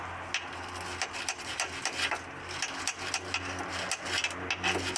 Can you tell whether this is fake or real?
real